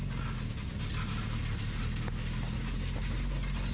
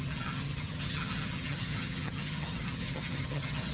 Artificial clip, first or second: second